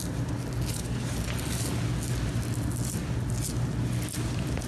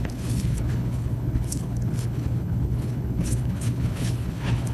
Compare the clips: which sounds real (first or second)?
first